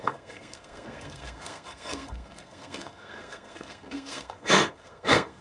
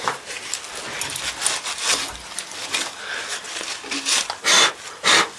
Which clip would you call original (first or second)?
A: second